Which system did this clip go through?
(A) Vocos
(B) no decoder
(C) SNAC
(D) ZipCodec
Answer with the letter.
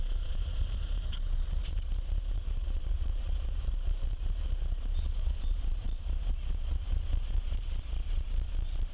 A